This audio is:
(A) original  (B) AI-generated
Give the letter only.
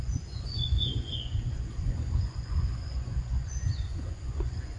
B